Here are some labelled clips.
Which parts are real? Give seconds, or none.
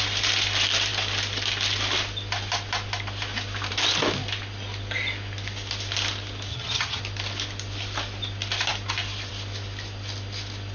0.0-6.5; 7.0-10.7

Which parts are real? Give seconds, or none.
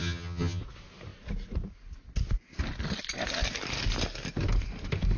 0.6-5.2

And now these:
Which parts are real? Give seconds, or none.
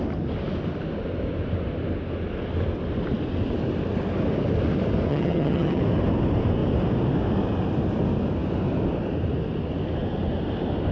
0.0-5.1; 5.8-10.9